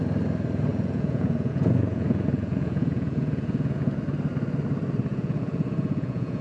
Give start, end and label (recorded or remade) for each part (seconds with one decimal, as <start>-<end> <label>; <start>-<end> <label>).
0.0-0.7 recorded; 0.7-4.0 remade; 4.0-5.1 recorded; 5.1-6.4 remade

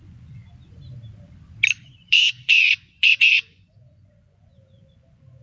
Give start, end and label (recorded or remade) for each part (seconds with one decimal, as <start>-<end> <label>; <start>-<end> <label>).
0.0-0.4 remade; 0.4-1.8 recorded; 1.8-5.4 remade

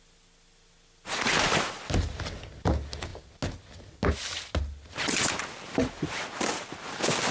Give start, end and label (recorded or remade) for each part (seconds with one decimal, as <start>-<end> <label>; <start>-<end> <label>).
0.0-7.3 recorded

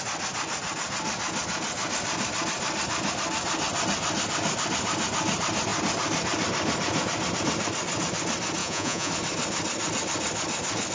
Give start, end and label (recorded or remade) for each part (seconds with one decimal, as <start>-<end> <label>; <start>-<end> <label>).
0.0-8.6 recorded; 8.6-9.1 remade; 9.1-10.9 recorded

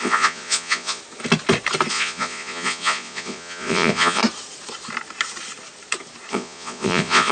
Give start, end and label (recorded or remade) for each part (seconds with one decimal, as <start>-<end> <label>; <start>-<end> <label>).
0.0-1.0 remade; 1.0-1.9 recorded; 1.9-4.2 remade; 4.2-6.3 recorded; 6.3-7.3 remade